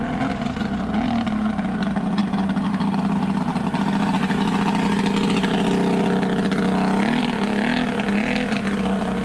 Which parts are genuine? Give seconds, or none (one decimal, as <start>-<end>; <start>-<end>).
0.0-9.2